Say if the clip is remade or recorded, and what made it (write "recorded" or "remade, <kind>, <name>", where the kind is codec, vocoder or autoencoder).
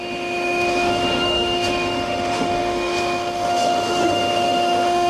remade, autoencoder, DAC-VAE